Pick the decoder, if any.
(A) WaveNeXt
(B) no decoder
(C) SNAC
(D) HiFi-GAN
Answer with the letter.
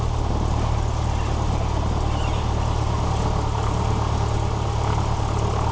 B